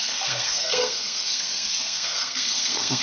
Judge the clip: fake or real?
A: fake